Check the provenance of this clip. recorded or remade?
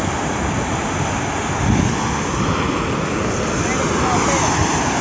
recorded